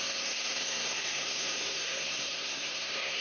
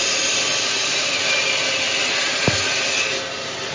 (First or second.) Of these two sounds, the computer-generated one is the first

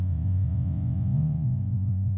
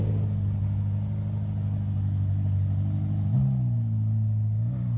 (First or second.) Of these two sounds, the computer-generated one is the first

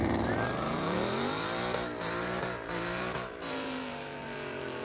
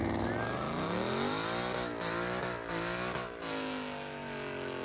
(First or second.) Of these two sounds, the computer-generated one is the first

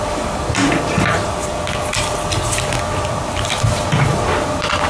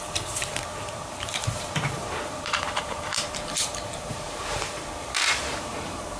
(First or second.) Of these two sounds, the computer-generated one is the second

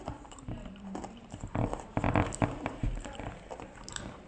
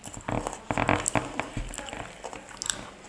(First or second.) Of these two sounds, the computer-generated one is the first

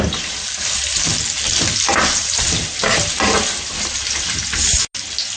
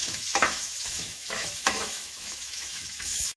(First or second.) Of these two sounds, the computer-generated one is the second